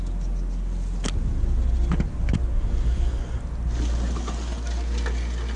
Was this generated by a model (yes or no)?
no